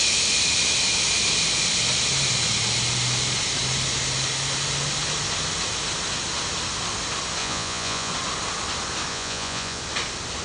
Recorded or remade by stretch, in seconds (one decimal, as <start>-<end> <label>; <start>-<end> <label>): 0.0-7.4 recorded; 7.4-8.1 remade; 8.1-9.1 recorded; 9.1-9.8 remade; 9.8-10.4 recorded